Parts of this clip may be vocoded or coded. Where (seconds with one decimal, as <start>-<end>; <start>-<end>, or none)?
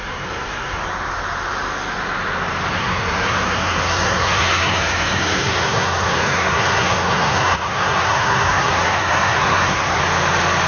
0.0-0.8; 2.7-10.0